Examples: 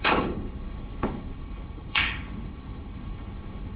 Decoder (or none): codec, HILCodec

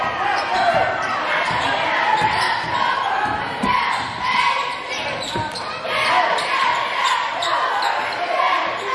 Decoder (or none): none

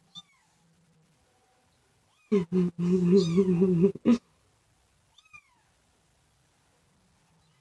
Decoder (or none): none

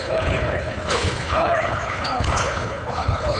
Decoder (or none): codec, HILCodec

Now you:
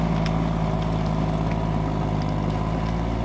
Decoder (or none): none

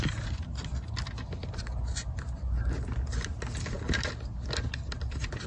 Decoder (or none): none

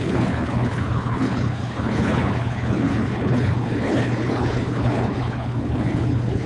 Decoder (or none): codec, HILCodec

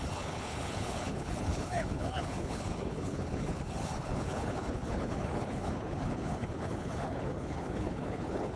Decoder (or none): codec, HILCodec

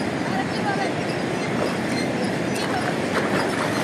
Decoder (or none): none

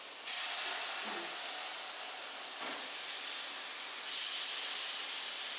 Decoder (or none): none